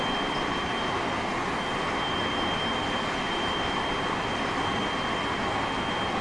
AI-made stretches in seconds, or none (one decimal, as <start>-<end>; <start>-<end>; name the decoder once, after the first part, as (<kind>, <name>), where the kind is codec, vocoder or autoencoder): 1.7-5.4 (vocoder, BigVGAN v2)